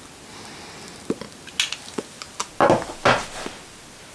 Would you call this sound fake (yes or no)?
no